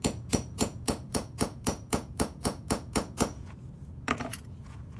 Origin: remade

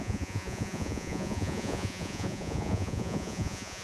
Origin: remade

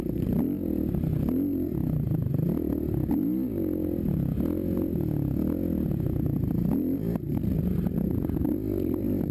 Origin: recorded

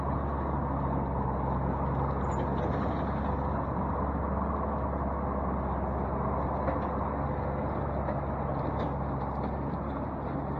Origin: recorded